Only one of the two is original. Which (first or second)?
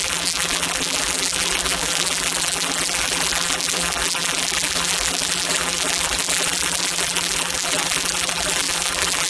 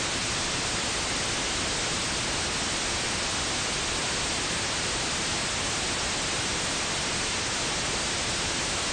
second